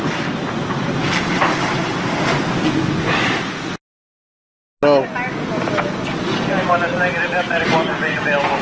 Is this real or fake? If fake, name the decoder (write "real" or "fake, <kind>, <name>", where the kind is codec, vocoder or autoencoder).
real